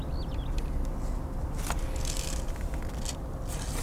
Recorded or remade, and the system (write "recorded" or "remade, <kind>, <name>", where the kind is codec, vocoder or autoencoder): recorded